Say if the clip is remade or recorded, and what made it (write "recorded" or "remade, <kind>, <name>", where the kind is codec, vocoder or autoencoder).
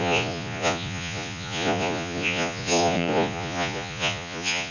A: remade, vocoder, Vocos